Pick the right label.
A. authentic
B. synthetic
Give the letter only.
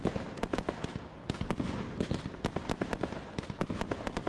A